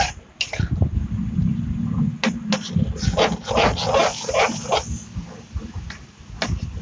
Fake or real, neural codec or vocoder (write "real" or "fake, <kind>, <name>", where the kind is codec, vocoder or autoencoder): real